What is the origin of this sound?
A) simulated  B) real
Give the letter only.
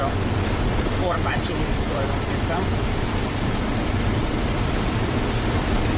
A